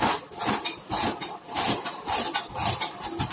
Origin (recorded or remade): recorded